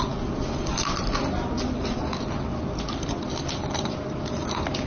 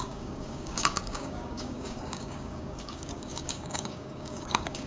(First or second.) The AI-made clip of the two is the second